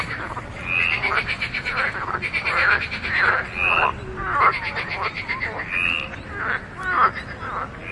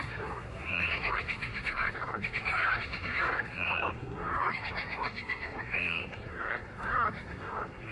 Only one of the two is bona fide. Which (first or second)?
first